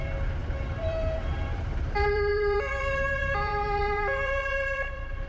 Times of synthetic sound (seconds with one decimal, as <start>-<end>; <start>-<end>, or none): 0.0-5.3